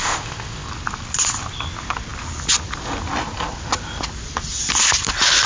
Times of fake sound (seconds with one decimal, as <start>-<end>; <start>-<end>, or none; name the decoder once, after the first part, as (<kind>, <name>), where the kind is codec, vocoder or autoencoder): 0.0-0.7 (codec, ZipCodec)